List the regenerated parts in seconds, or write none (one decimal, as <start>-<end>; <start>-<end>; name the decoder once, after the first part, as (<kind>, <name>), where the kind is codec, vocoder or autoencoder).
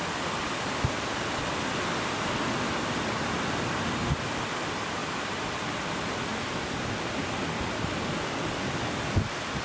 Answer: none